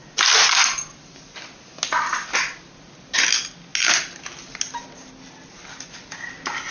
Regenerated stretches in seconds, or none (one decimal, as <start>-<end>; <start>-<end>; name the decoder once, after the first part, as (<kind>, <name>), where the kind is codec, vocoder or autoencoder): none